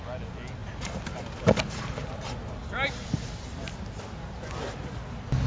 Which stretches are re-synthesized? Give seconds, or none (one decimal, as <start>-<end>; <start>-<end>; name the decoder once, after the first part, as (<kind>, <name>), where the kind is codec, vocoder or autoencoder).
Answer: none

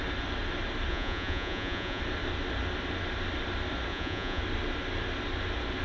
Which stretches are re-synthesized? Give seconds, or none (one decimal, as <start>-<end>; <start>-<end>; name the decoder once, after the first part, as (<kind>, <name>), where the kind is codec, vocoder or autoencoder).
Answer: 0.9-2.0 (vocoder, Vocos); 3.9-4.4

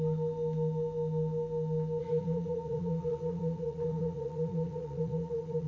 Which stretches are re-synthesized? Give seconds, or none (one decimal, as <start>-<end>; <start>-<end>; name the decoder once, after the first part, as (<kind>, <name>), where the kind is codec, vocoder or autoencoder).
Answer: 2.0-5.7 (vocoder, Vocos)

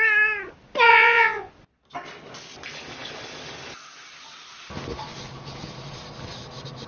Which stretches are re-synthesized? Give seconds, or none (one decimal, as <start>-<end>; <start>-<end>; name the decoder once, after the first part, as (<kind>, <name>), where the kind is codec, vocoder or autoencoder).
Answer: 0.9-1.5 (vocoder, Vocos)